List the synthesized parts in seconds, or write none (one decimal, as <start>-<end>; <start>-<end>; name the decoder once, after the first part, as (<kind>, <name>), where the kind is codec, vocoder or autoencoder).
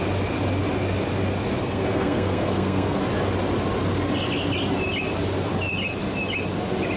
1.6-3.0 (codec, SNAC)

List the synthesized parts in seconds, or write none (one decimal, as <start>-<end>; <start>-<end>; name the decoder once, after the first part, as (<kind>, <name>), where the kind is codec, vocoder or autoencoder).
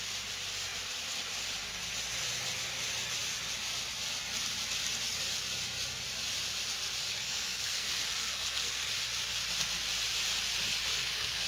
7.1-8.9 (codec, SNAC); 10.9-11.5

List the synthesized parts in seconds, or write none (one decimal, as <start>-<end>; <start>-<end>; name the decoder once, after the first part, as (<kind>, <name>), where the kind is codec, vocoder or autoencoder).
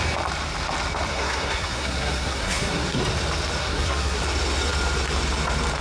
1.1-3.0 (codec, SNAC); 3.6-4.2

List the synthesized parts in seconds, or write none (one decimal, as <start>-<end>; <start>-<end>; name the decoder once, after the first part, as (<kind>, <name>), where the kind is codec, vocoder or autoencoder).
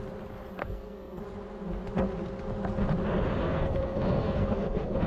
0.6-1.2 (codec, SNAC); 3.4-5.1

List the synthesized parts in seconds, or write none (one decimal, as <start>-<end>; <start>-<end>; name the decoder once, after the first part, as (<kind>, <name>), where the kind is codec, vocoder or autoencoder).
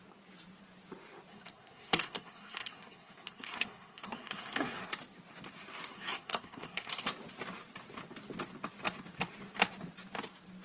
1.3-4.8 (codec, SNAC); 5.9-6.9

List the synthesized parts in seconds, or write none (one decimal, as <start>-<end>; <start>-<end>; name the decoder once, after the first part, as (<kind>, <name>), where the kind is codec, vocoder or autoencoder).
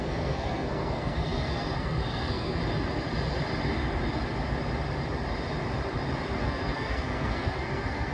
0.0-2.6 (codec, SNAC); 6.4-8.1